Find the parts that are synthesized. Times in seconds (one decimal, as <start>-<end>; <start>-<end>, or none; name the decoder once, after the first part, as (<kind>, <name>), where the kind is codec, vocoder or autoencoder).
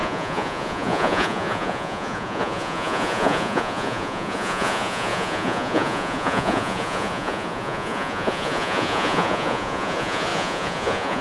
0.0-11.2 (vocoder, Vocos)